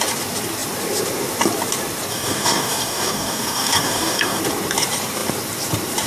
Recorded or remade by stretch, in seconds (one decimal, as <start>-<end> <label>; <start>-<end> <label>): 0.0-2.1 recorded; 2.1-4.4 remade; 4.4-6.1 recorded